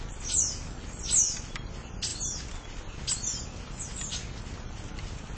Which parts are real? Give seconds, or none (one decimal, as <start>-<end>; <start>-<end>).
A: 0.0-5.4